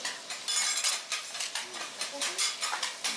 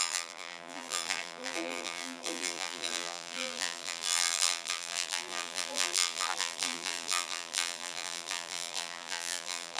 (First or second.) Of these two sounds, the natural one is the first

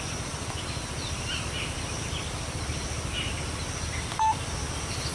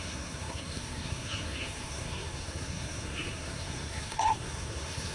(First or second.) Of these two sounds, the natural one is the first